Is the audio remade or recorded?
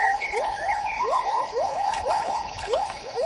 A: remade